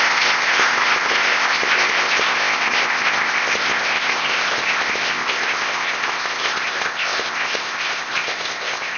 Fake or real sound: fake